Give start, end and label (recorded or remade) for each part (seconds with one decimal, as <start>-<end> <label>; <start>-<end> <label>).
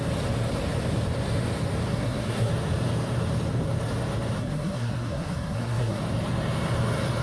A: 0.0-1.9 recorded; 1.9-2.5 remade; 2.5-4.4 recorded; 4.4-6.0 remade; 6.0-7.2 recorded